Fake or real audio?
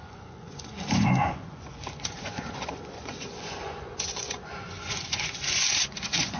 fake